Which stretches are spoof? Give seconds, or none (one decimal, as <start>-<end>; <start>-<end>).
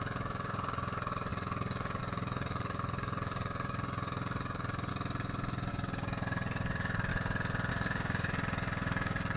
0.0-4.9; 5.7-7.1; 7.7-9.4